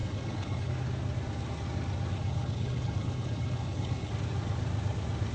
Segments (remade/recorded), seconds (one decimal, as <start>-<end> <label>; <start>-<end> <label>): 0.0-0.7 remade; 0.7-2.2 recorded; 2.2-4.1 remade; 4.1-5.3 recorded